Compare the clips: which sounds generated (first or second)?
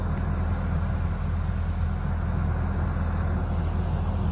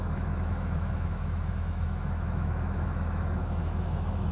second